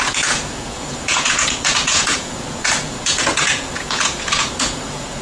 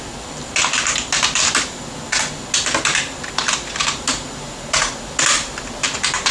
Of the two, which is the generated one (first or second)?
first